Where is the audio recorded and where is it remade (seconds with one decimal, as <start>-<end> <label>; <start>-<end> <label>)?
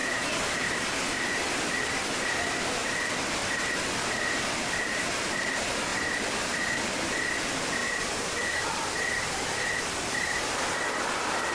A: 0.0-11.5 recorded